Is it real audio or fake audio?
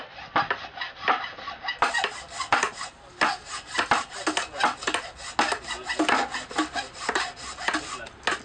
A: real